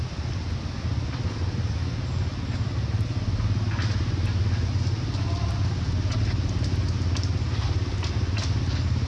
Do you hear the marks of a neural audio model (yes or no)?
no